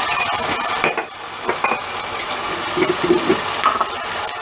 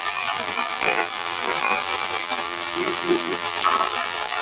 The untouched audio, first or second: first